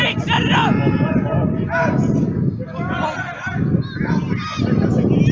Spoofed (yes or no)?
no